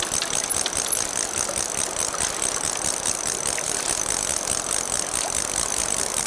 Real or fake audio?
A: real